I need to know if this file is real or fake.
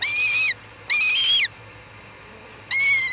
real